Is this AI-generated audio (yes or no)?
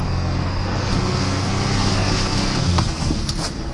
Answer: yes